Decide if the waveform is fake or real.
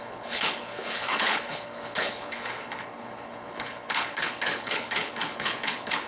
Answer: fake